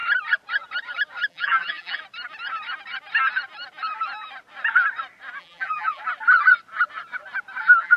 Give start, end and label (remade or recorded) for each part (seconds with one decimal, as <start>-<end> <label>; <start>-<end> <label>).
0.0-1.3 recorded; 1.3-2.0 remade; 2.0-5.4 recorded; 5.4-6.0 remade; 6.0-7.6 recorded; 7.6-8.0 remade